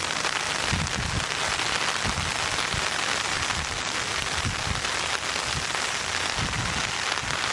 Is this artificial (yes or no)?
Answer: no